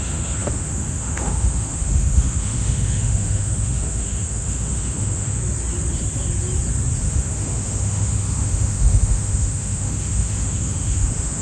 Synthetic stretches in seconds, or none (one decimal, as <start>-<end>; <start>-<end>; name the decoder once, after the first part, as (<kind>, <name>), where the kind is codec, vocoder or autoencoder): 0.0-5.4 (autoencoder, DAC-VAE); 7.0-11.4